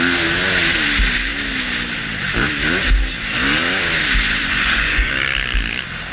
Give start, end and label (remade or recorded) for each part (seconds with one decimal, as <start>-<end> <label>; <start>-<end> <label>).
0.0-4.4 recorded; 4.4-5.1 remade; 5.1-6.1 recorded